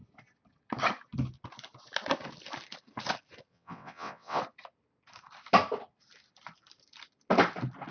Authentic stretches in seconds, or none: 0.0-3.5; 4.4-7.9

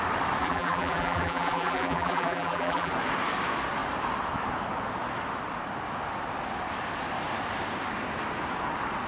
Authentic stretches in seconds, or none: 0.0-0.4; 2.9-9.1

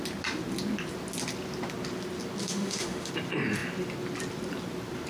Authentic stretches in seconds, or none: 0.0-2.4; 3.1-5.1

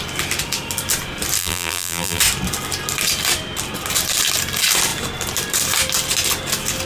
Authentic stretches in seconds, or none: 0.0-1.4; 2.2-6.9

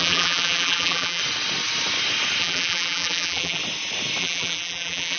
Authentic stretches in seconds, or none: 1.2-2.4; 3.6-4.2

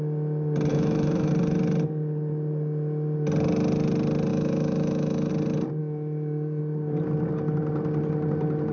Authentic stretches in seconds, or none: 0.0-0.7; 1.3-4.3; 5.3-5.8; 6.6-8.7

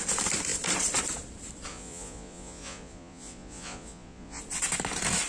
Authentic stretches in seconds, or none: 0.0-1.7; 4.4-5.3